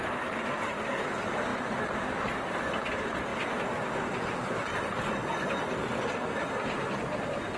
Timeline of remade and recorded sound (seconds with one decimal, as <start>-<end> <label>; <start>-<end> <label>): 0.0-1.5 recorded; 1.5-2.9 remade; 2.9-5.2 recorded; 5.2-7.0 remade; 7.0-7.6 recorded